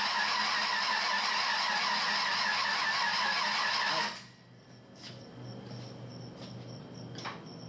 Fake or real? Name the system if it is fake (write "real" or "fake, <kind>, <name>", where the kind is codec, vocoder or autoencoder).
real